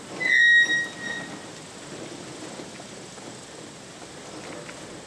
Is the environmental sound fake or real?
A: real